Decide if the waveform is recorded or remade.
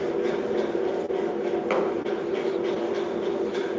recorded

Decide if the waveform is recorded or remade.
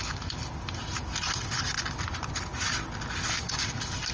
recorded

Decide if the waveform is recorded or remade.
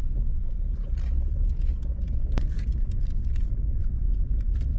recorded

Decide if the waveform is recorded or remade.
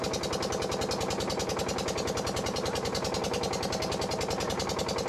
recorded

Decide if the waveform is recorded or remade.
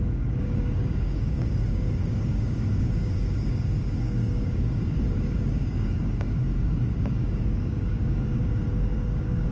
remade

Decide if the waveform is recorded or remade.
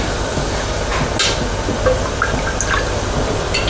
recorded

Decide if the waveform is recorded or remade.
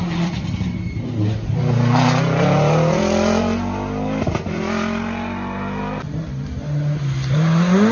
recorded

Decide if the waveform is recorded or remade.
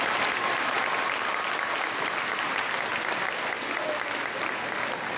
recorded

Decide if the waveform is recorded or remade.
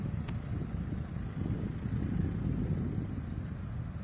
recorded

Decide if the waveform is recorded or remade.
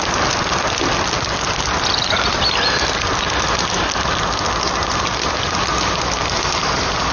recorded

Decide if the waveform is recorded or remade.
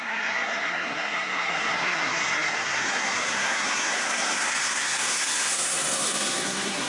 remade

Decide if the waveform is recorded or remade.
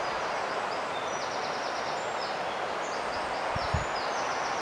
recorded